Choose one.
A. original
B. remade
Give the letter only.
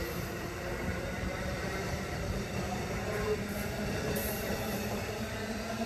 B